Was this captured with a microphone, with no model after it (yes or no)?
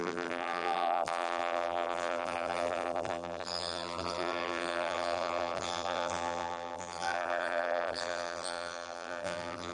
no